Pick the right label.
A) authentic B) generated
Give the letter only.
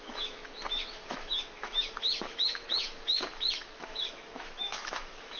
B